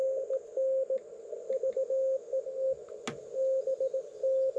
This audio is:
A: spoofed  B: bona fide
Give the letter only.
B